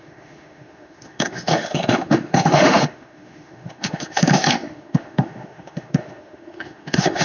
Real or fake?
fake